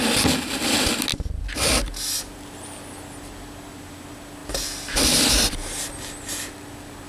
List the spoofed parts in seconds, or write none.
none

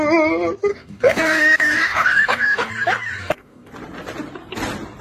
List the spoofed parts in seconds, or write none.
0.7-2.7 (codec, DAC); 3.2-3.7

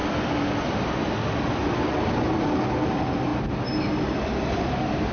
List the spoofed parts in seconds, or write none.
none

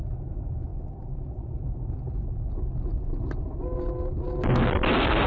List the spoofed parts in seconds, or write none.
none

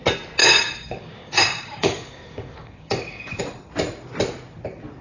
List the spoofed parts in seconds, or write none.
0.4-3.4 (codec, DAC)